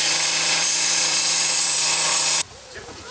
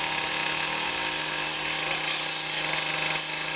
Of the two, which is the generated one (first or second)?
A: first